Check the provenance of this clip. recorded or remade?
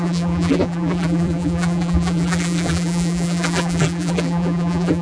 remade